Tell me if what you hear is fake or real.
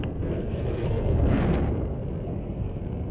fake